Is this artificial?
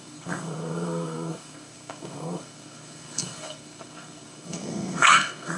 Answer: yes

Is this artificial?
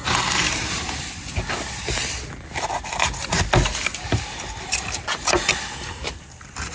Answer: no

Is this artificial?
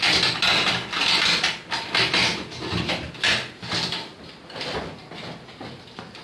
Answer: no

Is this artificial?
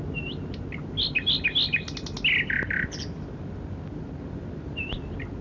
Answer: no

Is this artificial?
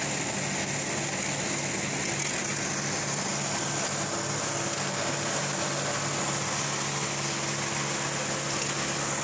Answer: no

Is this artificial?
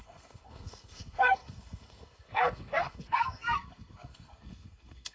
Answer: yes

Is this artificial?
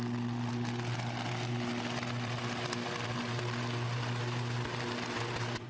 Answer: no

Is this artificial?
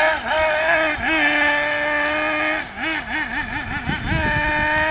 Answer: no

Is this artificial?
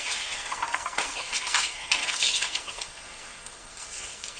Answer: yes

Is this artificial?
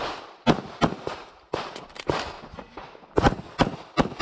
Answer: no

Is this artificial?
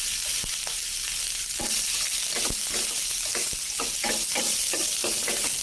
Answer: no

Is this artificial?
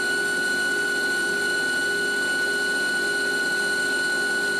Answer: no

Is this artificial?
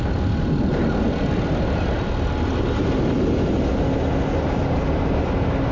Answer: no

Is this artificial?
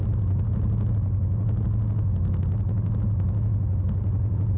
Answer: no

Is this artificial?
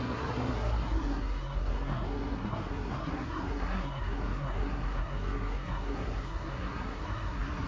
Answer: yes